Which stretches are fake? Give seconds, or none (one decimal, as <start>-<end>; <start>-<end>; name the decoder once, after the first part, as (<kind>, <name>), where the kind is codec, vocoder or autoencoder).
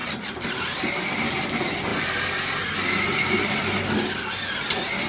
0.0-1.1 (vocoder, BigVGAN v2)